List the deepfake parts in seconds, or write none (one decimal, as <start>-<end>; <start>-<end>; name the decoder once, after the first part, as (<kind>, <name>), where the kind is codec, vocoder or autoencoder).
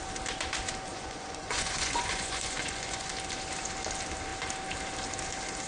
0.9-3.1 (vocoder, Vocos)